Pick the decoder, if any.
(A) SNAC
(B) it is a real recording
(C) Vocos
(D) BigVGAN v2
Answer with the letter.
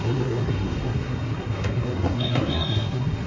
A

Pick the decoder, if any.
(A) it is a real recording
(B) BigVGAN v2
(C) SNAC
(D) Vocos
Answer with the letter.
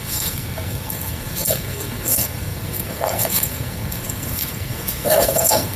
C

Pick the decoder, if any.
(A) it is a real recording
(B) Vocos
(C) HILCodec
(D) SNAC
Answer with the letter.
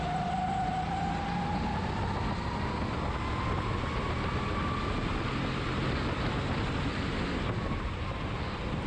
A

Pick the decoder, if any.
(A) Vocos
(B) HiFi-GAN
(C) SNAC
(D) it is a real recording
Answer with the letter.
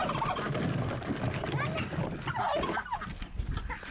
D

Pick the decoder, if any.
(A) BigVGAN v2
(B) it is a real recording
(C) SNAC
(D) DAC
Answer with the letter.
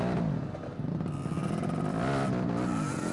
B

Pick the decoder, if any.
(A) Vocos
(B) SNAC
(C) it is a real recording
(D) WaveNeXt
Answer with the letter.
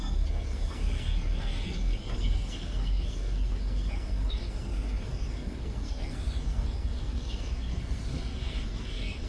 B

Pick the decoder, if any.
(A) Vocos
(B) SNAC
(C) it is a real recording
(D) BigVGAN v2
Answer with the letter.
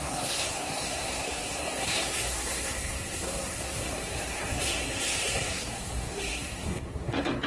B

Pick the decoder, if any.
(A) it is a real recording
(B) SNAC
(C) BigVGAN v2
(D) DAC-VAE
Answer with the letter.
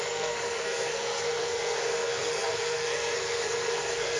B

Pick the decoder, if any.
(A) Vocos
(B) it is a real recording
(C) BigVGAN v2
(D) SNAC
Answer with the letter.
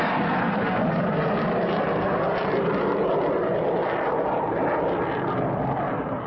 B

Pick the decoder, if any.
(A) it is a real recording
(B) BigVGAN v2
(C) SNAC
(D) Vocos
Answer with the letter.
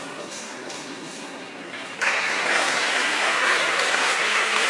C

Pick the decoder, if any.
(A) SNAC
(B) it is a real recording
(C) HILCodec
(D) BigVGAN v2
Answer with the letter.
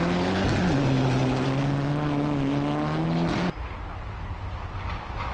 B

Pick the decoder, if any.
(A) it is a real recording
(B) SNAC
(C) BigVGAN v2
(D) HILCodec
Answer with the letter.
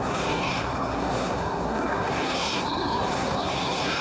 B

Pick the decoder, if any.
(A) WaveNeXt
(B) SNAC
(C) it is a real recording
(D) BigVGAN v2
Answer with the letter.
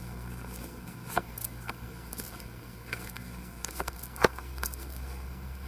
B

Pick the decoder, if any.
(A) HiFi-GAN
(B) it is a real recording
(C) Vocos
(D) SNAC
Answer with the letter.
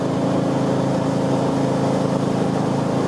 B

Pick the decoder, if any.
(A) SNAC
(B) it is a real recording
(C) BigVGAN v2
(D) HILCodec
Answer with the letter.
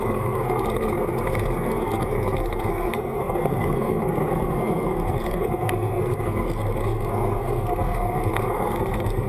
A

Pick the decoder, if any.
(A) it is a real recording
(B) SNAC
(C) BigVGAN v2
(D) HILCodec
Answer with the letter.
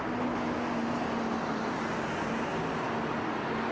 A